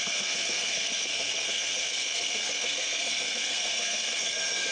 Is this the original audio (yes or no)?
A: no